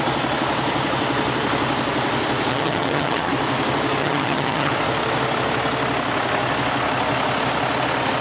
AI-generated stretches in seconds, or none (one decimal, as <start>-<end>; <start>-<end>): 2.5-3.3; 4.0-4.7